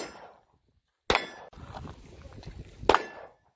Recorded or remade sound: recorded